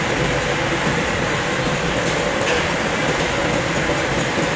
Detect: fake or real real